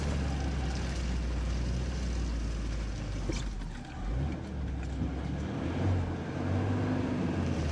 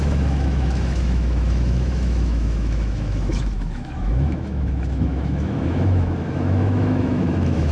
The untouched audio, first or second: first